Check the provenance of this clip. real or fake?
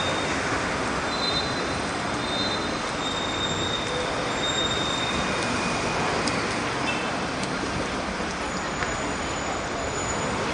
real